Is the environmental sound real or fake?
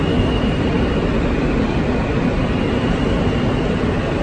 real